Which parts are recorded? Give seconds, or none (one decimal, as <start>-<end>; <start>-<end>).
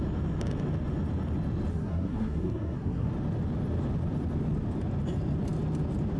0.0-1.7; 3.1-6.2